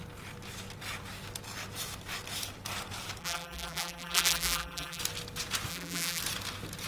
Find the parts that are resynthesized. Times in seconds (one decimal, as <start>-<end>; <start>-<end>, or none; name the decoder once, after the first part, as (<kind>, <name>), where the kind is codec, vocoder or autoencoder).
3.2-5.0 (vocoder, BigVGAN v2); 5.7-6.2